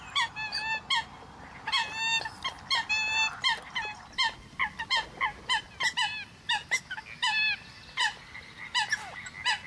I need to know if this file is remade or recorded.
recorded